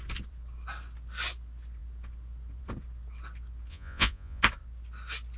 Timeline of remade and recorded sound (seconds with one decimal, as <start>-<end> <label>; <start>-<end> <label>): 0.0-3.7 recorded; 3.7-4.4 remade; 4.4-5.4 recorded